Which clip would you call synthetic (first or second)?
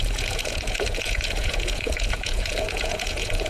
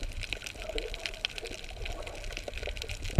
first